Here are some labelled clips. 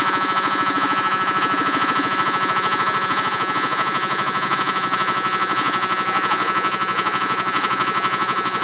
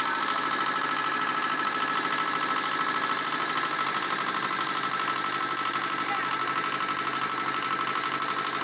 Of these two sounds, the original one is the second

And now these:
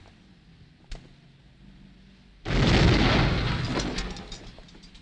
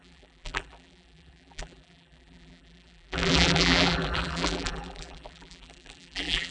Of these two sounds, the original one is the first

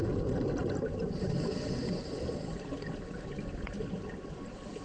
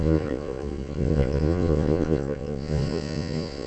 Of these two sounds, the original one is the first